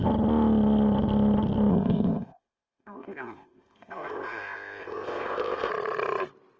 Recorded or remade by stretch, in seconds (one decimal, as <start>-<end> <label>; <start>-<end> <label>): 0.0-1.7 recorded; 1.7-5.7 remade; 5.7-6.6 recorded